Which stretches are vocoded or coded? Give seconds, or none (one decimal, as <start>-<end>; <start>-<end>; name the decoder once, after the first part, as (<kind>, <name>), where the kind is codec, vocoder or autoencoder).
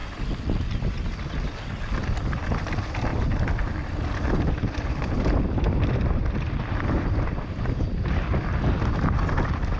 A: 3.1-7.9 (vocoder, BigVGAN v2)